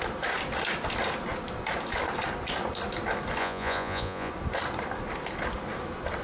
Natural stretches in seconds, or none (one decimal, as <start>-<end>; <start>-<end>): 0.0-3.4; 4.3-6.2